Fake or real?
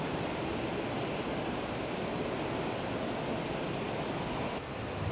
real